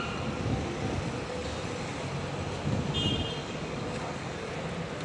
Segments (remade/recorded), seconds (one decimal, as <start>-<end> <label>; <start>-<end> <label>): 0.0-3.4 recorded; 3.4-4.5 remade; 4.5-5.0 recorded